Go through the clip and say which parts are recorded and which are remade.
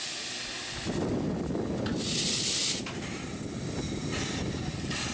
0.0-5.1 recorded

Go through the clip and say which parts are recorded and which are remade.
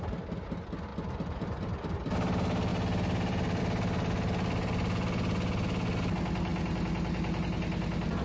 0.0-0.9 recorded; 0.9-2.1 remade; 2.1-2.7 recorded; 2.7-3.6 remade; 3.6-8.2 recorded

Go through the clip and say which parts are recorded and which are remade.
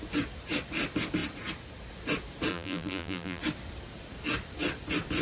0.0-2.5 recorded; 2.5-3.4 remade; 3.4-5.2 recorded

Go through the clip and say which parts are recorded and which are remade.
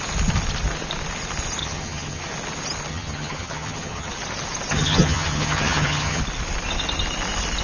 0.0-1.6 recorded; 1.6-2.2 remade; 2.2-2.9 recorded; 2.9-4.1 remade; 4.1-4.7 recorded; 4.7-6.2 remade; 6.2-7.6 recorded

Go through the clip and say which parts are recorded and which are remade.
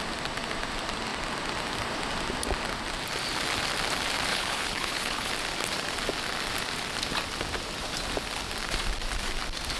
0.0-4.3 recorded; 4.3-5.3 remade; 5.3-9.8 recorded